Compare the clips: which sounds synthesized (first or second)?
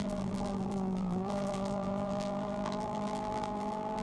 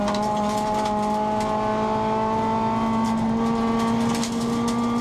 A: first